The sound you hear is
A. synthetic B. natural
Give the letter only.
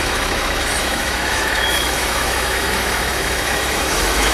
A